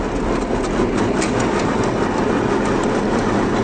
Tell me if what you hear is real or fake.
real